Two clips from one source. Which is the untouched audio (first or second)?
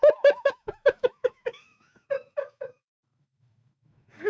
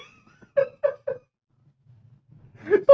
second